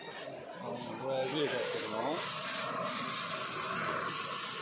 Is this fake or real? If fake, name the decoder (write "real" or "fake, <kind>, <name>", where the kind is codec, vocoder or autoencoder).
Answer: real